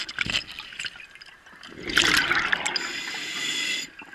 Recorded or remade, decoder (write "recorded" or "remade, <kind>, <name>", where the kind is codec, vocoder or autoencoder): recorded